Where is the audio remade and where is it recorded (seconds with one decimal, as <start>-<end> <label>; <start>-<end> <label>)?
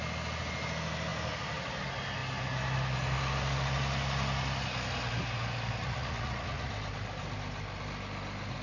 0.0-5.8 recorded; 5.8-6.7 remade; 6.7-8.6 recorded